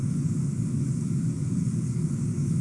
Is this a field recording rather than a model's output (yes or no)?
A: no